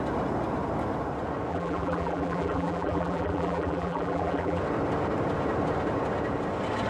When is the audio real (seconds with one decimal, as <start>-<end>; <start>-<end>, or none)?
0.0-1.5; 4.6-6.9

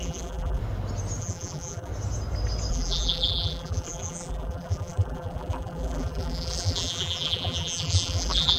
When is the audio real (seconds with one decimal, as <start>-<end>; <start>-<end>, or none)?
0.6-1.2; 1.9-2.7

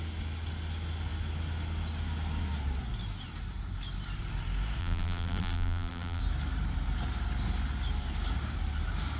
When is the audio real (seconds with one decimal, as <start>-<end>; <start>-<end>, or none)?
0.0-4.8; 6.2-9.2

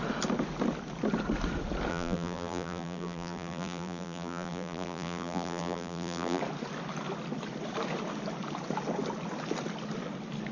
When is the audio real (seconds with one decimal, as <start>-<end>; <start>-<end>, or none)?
0.0-1.9; 6.4-10.5

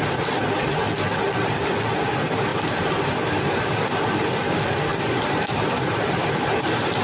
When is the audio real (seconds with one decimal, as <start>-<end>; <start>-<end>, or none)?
0.0-2.5; 4.1-4.9